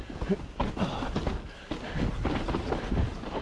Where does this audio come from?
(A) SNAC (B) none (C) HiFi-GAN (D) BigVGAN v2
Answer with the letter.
B